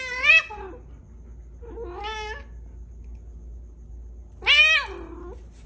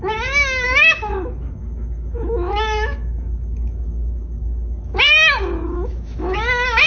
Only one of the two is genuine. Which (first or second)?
first